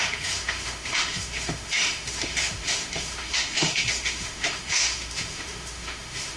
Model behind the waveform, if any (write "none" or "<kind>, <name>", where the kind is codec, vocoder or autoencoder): autoencoder, DAC-VAE